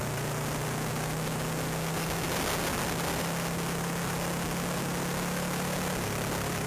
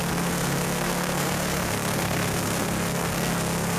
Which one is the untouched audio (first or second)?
first